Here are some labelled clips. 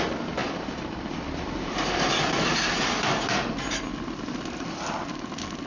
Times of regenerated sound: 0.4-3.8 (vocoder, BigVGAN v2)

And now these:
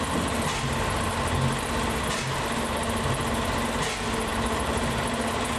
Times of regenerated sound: none

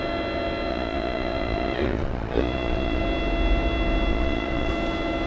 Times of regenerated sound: 0.7-3.0 (vocoder, Vocos); 4.1-4.7